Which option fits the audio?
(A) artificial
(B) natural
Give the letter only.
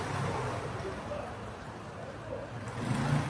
B